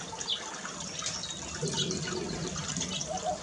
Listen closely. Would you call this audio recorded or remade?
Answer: recorded